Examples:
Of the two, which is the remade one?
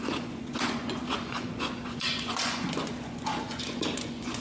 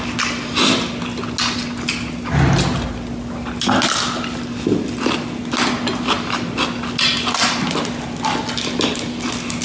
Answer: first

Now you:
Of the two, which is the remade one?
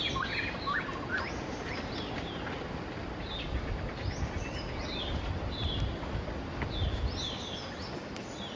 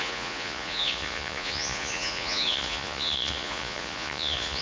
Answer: second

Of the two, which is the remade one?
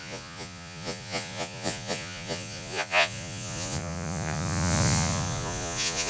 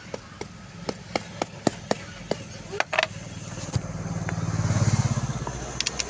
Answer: first